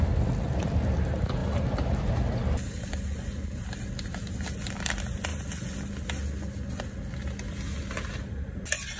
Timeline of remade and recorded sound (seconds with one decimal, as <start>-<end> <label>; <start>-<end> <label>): 0.0-1.4 recorded; 1.4-2.0 remade; 2.0-9.0 recorded